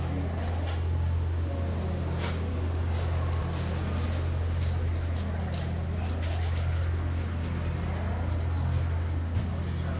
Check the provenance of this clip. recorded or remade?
recorded